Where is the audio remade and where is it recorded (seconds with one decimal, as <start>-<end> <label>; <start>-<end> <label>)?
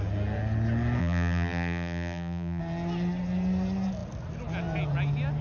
0.0-1.0 recorded; 1.0-2.6 remade; 2.6-5.4 recorded